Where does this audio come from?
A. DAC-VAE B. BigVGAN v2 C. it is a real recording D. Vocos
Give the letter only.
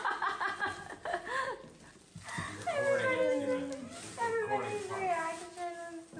C